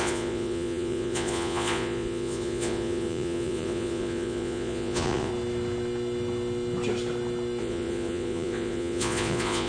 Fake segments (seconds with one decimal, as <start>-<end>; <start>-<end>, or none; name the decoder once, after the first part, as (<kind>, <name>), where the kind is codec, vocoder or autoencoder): 0.0-5.3 (vocoder, Vocos); 7.6-9.7